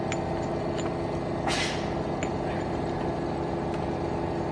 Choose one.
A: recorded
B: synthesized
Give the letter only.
A